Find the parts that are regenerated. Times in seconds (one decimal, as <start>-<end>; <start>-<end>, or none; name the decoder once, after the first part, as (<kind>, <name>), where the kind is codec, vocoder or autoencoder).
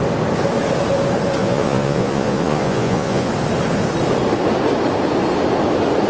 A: 1.4-3.3 (vocoder, Vocos)